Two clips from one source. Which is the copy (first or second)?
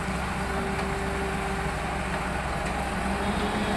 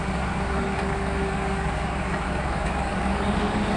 second